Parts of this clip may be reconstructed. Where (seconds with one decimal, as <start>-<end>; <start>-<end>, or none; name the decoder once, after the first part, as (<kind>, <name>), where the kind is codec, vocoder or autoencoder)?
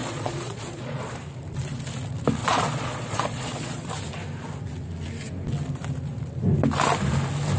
0.0-1.1 (vocoder, Vocos); 2.4-3.9